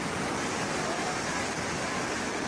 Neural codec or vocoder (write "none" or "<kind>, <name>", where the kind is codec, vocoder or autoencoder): none